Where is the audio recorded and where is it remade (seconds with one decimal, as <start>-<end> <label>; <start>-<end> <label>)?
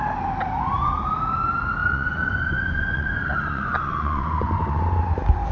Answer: 0.0-1.8 recorded; 1.8-4.8 remade; 4.8-5.5 recorded